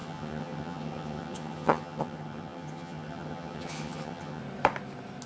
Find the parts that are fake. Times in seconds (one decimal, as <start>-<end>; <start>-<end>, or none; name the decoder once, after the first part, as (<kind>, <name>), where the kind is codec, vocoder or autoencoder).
0.0-4.4 (vocoder, HiFi-GAN)